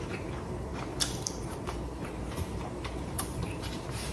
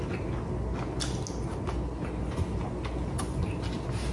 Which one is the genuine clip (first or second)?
second